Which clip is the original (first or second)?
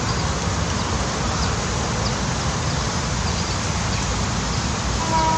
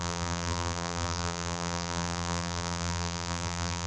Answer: first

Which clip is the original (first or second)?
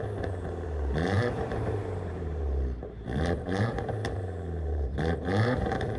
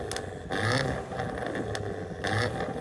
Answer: second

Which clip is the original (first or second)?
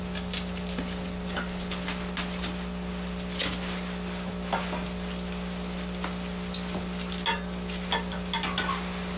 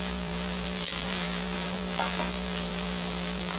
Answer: first